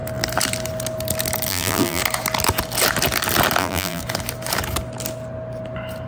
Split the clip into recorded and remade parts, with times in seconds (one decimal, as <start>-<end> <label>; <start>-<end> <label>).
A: 0.0-1.5 recorded; 1.5-2.0 remade; 2.0-3.6 recorded; 3.6-4.0 remade; 4.0-6.1 recorded